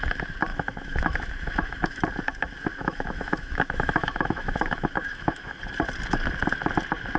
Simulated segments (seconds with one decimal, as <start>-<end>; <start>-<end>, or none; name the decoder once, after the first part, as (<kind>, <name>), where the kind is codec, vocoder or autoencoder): 0.5-2.0 (autoencoder, DAC-VAE); 2.7-5.6